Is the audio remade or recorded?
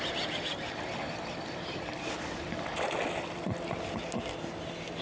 recorded